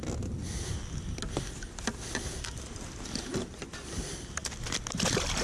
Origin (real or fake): real